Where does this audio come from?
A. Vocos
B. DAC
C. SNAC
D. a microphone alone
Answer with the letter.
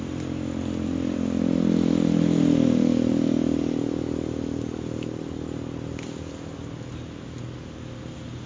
D